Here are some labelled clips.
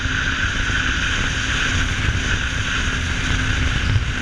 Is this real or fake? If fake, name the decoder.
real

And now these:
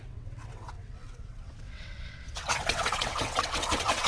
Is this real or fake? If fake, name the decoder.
fake, vocoder, WaveNeXt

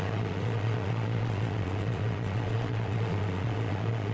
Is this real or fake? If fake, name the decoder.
fake, vocoder, Vocos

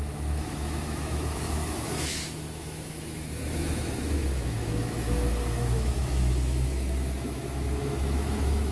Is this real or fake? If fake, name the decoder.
fake, autoencoder, DAC-VAE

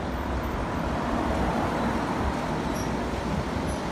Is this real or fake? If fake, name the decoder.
real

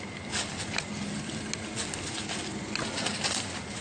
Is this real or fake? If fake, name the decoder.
real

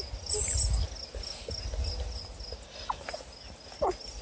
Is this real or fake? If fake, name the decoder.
real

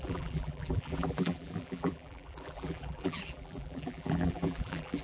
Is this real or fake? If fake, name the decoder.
fake, vocoder, BigVGAN v2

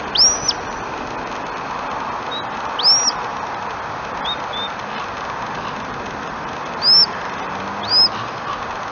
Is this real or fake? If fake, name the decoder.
real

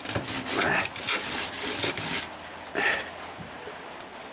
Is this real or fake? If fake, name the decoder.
real